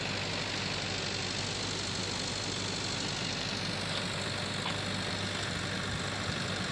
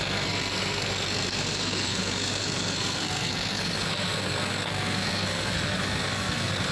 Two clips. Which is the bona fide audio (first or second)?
first